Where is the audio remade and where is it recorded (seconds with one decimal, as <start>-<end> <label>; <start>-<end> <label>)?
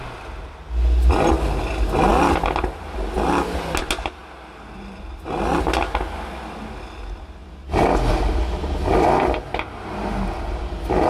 0.0-11.1 recorded